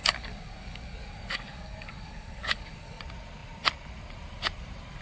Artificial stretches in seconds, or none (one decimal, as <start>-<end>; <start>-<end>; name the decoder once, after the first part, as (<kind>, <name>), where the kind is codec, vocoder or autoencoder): 0.0-3.0 (codec, DAC)